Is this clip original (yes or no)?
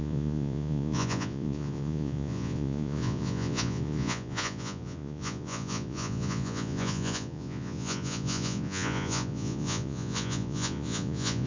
no